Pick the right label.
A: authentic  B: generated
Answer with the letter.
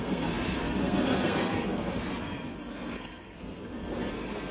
B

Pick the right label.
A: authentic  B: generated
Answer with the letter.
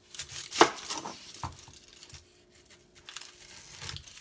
A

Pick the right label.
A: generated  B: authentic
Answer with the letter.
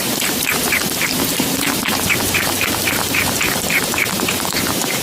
A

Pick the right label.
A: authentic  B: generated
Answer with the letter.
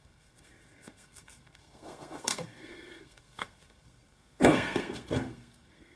B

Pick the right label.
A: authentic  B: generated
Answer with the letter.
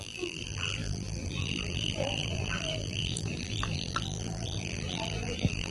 B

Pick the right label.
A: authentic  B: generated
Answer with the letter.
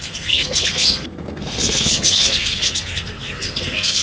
B